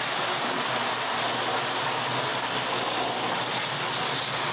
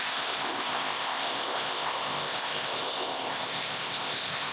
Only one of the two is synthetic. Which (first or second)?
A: second